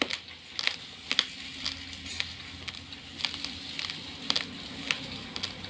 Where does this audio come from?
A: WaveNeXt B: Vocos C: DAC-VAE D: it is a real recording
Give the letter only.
D